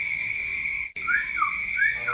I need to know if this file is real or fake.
fake